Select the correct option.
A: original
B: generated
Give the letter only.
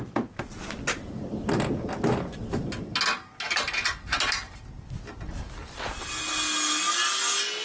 A